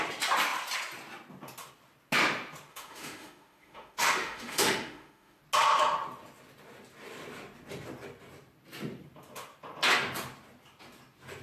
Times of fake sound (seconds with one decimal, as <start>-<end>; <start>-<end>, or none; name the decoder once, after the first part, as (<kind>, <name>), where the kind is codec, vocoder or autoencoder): 2.7-5.4 (autoencoder, DAC-VAE)